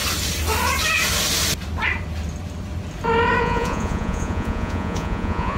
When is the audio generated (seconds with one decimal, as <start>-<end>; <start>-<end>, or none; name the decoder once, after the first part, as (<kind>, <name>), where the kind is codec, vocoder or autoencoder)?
3.4-5.6 (vocoder, Vocos)